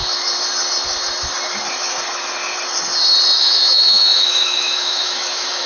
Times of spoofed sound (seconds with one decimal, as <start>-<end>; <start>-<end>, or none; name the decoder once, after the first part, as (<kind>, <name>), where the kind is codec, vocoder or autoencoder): 3.4-5.7 (autoencoder, DAC-VAE)

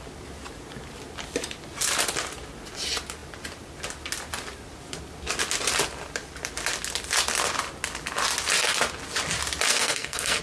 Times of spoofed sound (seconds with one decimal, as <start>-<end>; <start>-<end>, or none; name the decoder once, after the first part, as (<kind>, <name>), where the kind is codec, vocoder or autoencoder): 9.7-10.4 (codec, SNAC)

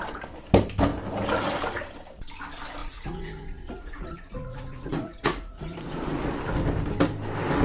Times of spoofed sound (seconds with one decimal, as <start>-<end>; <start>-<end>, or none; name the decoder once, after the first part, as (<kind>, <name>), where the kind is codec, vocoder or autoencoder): 2.8-6.3 (vocoder, Vocos)

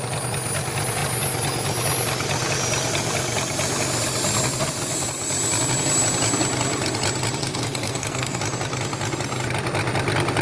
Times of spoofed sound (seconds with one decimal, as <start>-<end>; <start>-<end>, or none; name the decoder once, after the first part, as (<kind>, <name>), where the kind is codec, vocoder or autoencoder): 7.4-8.4 (codec, SNAC)

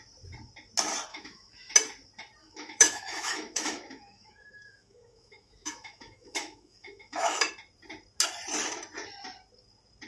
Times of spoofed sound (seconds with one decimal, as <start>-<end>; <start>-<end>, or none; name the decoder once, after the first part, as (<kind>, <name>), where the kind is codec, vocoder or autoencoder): 1.1-1.7 (autoencoder, DAC-VAE); 2.4-7.5